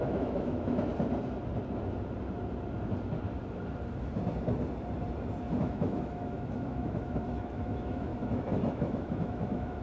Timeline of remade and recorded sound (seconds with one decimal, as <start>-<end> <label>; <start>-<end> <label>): 0.0-0.9 remade; 0.9-5.6 recorded; 5.6-8.1 remade; 8.1-8.7 recorded; 8.7-9.8 remade